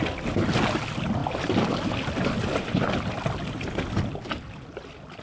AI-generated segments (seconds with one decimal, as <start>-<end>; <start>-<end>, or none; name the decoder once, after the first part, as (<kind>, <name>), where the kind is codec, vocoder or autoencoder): none